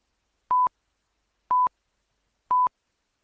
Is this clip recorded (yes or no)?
yes